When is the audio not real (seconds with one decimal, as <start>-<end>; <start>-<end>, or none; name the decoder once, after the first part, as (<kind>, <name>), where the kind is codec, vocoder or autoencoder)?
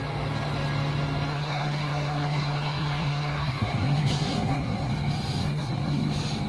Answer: 1.3-4.9 (codec, SNAC); 5.4-6.1